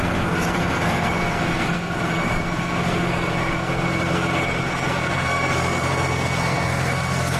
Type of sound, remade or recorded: remade